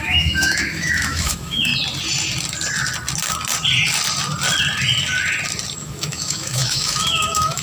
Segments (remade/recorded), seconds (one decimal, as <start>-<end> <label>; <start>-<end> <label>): 0.0-1.7 remade; 1.7-5.8 recorded; 5.8-7.6 remade